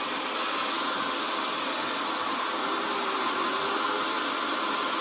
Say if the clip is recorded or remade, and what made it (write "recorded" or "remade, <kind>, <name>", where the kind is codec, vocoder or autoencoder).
recorded